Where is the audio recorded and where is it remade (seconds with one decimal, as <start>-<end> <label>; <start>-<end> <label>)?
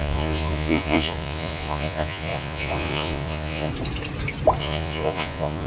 0.0-3.7 remade; 3.7-4.6 recorded; 4.6-5.7 remade